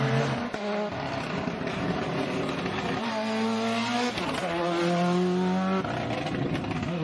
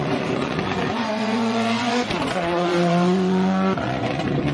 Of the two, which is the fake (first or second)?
second